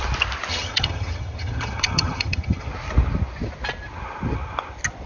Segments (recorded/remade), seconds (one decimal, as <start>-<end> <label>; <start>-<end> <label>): 0.0-0.5 recorded; 0.5-2.7 remade; 2.7-5.1 recorded